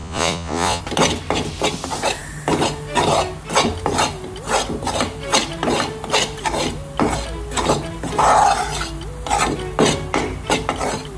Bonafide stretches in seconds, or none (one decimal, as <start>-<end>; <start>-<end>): 0.8-11.2